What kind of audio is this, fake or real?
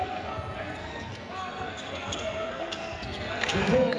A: fake